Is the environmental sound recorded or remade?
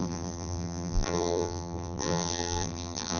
remade